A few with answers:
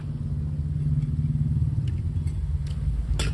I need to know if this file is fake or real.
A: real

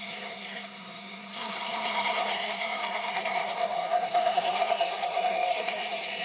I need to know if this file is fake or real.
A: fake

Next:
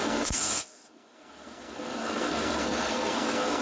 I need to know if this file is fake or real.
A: fake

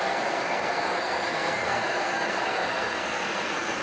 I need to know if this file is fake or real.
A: fake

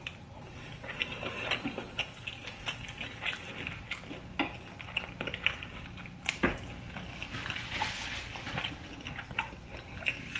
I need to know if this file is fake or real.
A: real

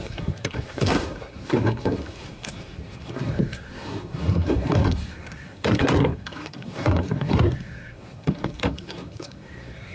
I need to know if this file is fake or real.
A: fake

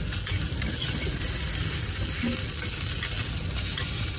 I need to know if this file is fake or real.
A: real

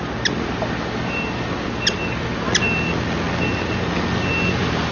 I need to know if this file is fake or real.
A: real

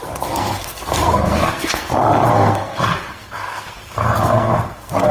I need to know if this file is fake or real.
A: fake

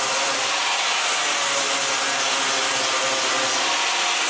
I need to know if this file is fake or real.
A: real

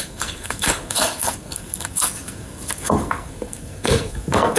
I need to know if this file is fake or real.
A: fake